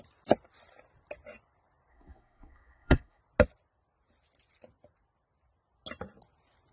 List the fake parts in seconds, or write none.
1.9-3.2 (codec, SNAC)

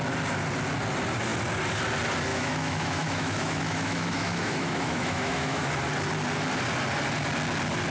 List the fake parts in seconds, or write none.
2.3-5.7 (autoencoder, DAC-VAE)

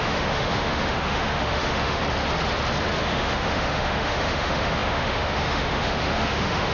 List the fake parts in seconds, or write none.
0.0-2.0 (autoencoder, DAC-VAE); 3.0-6.7

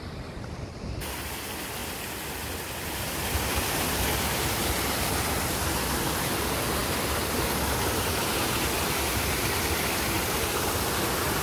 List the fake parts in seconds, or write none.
none

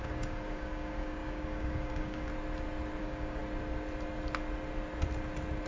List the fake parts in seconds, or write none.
0.0-2.3 (codec, DAC); 3.0-3.4

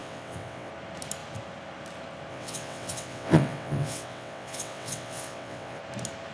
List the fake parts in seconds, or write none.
0.0-0.7 (vocoder, WaveNeXt); 2.3-5.8

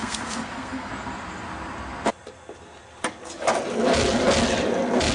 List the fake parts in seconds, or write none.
0.0-0.9 (codec, SNAC)